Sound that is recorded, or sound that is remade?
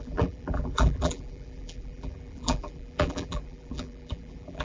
remade